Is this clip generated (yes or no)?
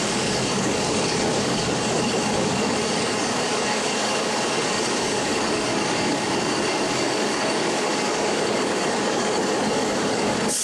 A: yes